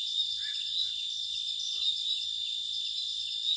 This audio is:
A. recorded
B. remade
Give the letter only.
A